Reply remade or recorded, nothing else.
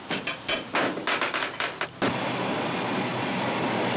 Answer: recorded